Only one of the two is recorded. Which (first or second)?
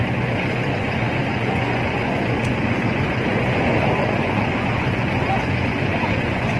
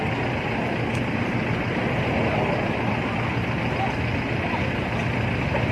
second